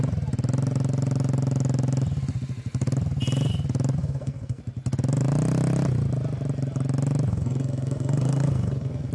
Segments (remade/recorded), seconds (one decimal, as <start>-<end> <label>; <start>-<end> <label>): 0.0-4.0 recorded; 4.0-4.6 remade; 4.6-7.3 recorded; 7.3-9.1 remade